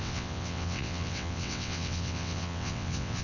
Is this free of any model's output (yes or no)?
no